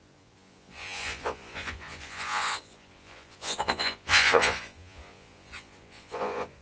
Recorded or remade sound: remade